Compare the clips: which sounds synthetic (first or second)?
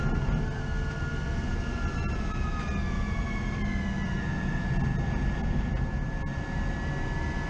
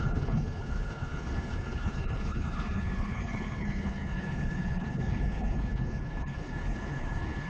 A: second